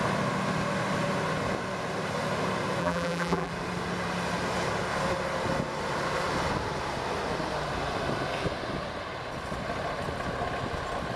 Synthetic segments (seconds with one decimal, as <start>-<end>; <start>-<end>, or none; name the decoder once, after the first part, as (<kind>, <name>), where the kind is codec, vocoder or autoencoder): 2.8-3.5 (vocoder, BigVGAN v2)